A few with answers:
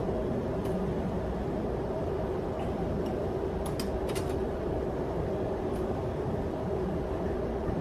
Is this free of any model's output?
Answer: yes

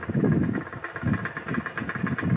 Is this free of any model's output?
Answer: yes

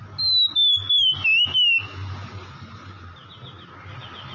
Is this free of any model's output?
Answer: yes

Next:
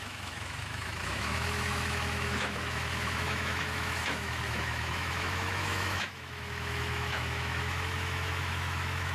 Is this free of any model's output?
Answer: no